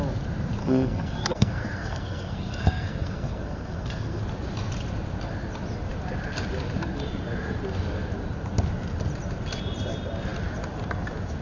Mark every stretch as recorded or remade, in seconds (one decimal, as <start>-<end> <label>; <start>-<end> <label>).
0.0-0.6 recorded; 0.6-4.2 remade; 4.2-11.4 recorded